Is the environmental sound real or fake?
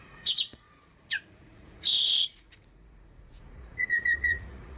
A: fake